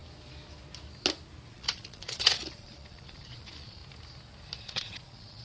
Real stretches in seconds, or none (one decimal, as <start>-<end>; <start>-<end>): 0.0-1.5; 3.8-4.6